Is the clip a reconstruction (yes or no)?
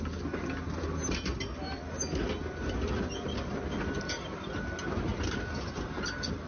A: no